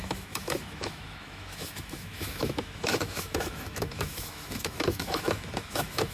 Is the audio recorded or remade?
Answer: remade